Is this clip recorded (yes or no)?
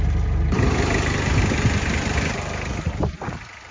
yes